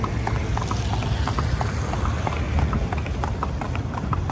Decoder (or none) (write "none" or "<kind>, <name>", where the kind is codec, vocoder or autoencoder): none